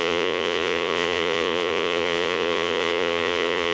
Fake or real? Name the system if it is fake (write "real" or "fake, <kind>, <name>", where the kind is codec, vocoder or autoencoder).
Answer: fake, vocoder, Vocos